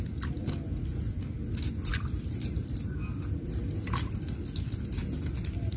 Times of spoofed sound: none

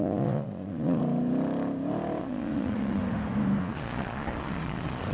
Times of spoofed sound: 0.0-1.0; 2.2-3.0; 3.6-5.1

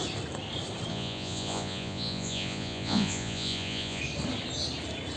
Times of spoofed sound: 0.9-4.0

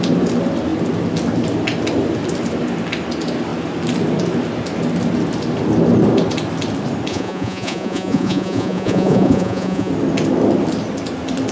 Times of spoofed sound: 7.1-9.9